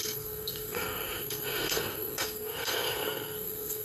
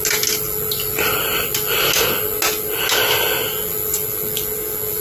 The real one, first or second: second